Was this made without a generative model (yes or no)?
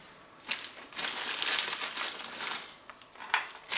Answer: yes